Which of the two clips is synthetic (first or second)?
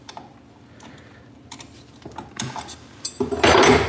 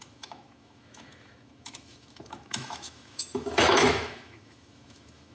second